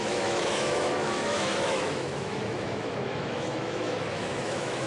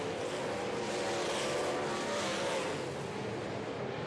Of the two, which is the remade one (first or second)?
first